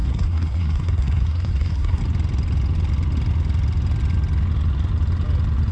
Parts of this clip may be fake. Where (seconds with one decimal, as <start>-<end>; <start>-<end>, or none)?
0.0-2.0